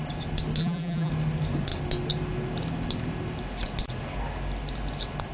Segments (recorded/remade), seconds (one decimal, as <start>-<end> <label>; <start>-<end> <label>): 0.0-0.6 recorded; 0.6-1.1 remade; 1.1-5.3 recorded